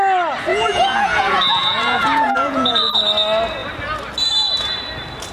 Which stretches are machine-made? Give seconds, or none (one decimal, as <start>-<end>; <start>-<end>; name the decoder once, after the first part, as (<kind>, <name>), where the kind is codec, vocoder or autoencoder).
0.5-2.9 (vocoder, Vocos)